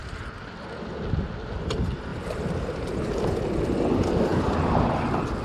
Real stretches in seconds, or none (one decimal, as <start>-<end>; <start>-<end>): 0.0-2.1; 3.3-5.4